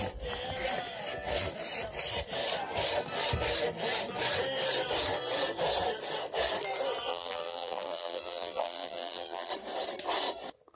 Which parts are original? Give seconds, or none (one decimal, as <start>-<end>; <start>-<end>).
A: 0.0-7.1; 9.5-10.8